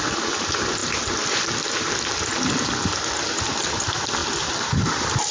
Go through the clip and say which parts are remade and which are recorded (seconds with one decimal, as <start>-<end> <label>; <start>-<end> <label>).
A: 0.0-5.3 recorded